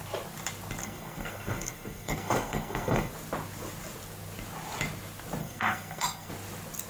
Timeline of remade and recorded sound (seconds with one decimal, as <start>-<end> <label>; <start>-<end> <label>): 0.0-0.8 recorded; 0.8-3.1 remade; 3.1-5.4 recorded; 5.4-6.3 remade; 6.3-6.9 recorded